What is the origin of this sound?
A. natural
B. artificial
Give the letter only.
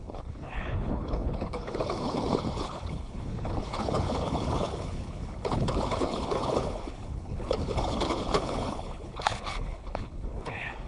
B